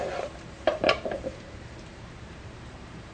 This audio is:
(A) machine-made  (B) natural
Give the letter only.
A